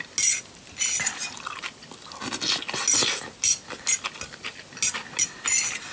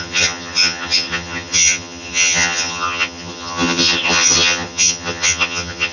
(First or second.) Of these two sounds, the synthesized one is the second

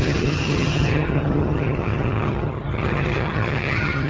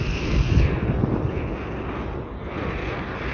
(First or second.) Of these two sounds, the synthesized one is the first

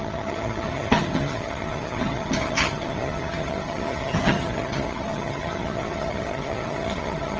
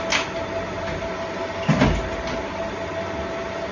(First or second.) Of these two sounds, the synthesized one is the first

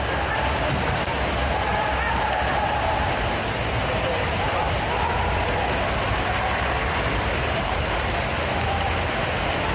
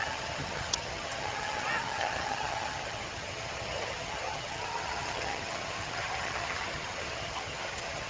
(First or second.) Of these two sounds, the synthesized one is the second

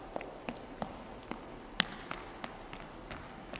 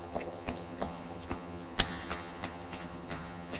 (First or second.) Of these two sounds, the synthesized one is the second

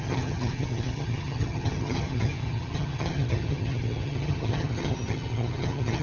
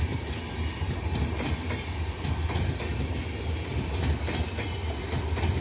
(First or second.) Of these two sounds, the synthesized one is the first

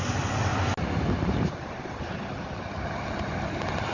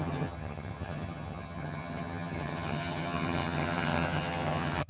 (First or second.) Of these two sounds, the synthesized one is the second